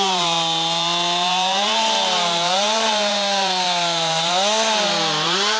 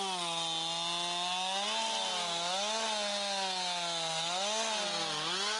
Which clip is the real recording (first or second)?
second